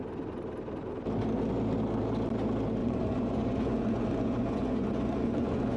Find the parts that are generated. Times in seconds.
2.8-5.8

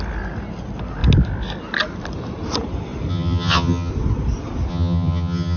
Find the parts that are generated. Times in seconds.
3.1-3.9; 4.7-5.6

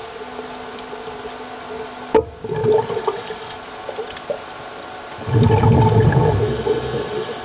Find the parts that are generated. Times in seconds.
0.0-1.5; 2.6-5.2

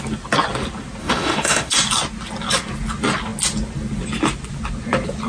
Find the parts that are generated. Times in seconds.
1.0-1.7

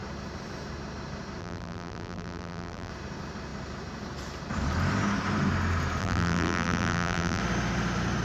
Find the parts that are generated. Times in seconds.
1.4-2.9; 6.0-7.4

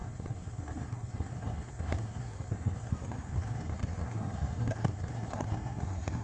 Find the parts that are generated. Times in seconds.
0.0-6.2

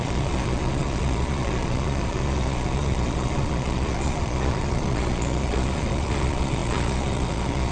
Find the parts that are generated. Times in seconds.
0.0-7.7